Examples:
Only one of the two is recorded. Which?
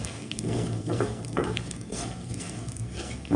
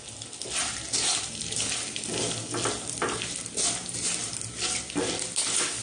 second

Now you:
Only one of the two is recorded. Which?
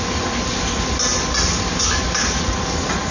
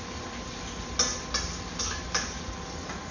second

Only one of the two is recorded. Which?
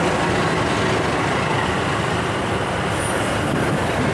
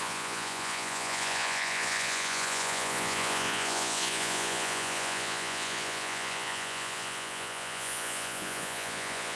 first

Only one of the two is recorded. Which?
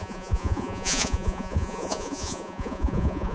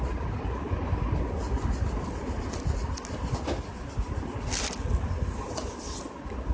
second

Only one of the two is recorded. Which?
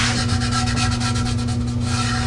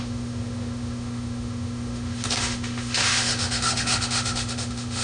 first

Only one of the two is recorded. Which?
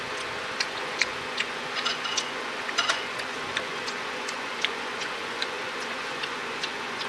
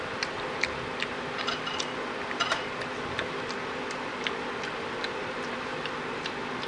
second